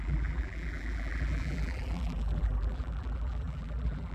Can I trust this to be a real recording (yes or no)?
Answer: no